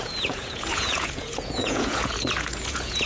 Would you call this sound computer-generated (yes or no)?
yes